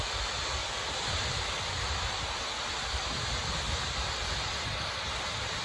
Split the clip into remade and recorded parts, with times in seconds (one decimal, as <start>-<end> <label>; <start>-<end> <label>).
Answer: 0.0-5.6 recorded